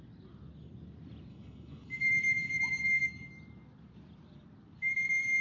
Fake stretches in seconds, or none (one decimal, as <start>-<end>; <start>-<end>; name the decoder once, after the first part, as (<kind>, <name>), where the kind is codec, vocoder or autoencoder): 1.3-3.3 (autoencoder, DAC-VAE)